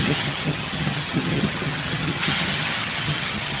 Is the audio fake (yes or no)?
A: yes